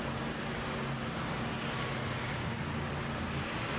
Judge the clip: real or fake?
real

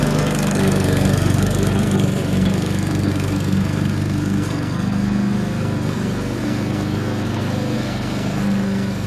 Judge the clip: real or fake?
fake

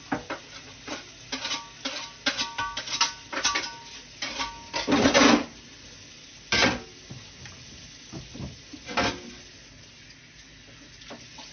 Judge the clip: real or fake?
real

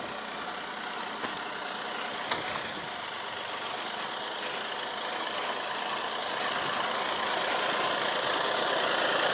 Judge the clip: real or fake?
real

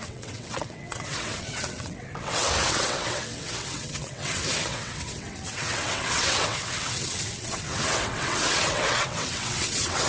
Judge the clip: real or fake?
fake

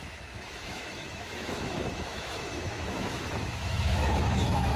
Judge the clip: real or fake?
fake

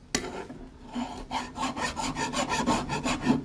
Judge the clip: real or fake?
real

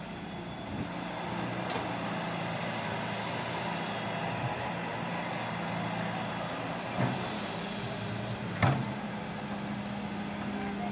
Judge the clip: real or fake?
real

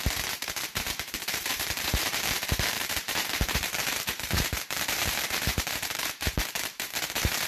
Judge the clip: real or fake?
fake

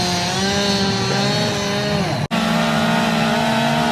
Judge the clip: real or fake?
real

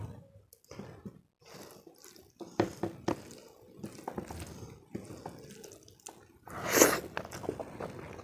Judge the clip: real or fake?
real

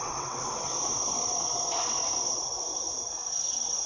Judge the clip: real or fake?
fake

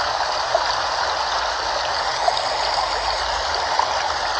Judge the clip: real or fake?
real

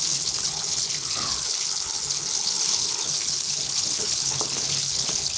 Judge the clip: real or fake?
fake